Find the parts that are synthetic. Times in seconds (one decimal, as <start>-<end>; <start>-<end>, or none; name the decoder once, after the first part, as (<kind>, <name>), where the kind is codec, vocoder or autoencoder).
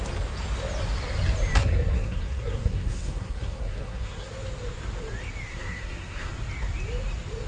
1.6-4.3 (codec, SNAC); 5.5-6.3